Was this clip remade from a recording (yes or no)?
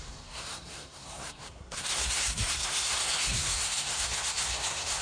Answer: yes